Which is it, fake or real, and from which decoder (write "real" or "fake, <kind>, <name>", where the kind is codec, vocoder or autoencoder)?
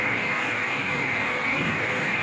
fake, codec, DAC